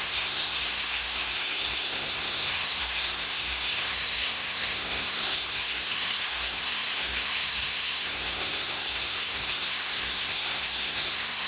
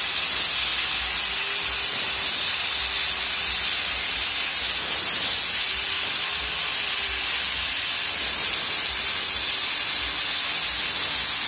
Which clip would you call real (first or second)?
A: second